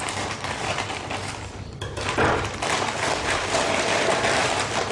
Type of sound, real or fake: fake